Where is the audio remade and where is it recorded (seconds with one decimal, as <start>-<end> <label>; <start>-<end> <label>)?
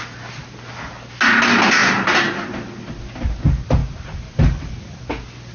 0.0-1.8 recorded; 1.8-2.5 remade; 2.5-3.8 recorded; 3.8-5.0 remade; 5.0-5.5 recorded